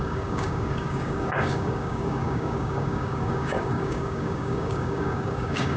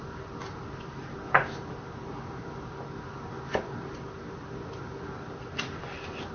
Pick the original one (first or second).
second